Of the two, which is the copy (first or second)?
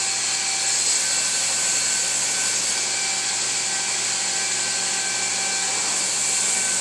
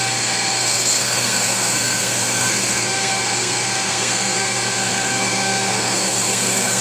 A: second